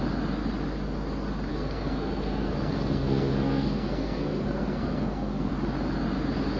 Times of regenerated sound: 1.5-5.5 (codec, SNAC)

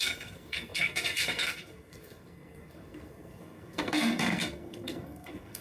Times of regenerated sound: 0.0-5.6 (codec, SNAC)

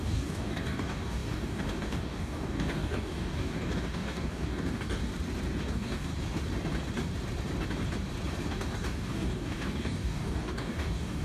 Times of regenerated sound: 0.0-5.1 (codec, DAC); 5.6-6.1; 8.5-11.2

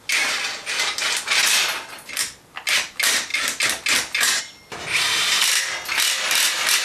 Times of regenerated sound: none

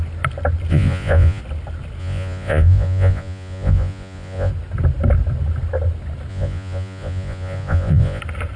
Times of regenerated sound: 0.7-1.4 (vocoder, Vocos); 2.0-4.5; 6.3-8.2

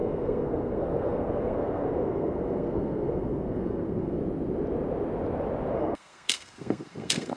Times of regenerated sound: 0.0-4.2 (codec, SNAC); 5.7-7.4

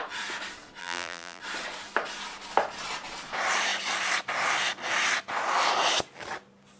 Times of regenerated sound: 0.8-1.4 (vocoder, BigVGAN v2)

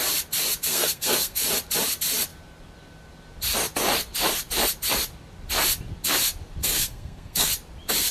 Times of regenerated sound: 0.7-1.4 (codec, SNAC); 6.6-7.5